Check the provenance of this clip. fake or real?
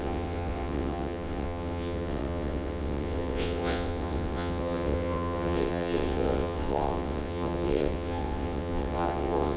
fake